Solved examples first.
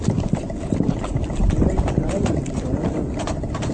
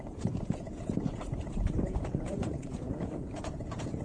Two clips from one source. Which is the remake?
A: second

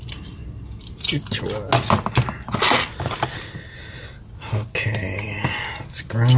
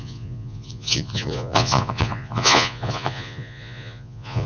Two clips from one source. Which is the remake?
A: second